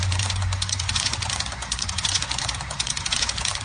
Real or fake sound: fake